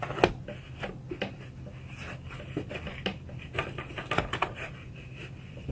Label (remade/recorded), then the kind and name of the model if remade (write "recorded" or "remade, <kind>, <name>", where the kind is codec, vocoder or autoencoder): recorded